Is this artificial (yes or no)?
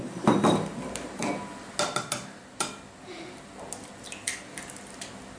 no